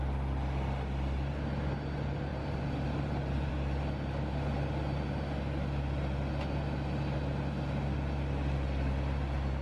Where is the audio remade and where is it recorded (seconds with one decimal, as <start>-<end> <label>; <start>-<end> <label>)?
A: 0.0-2.3 recorded; 2.3-3.5 remade; 3.5-9.6 recorded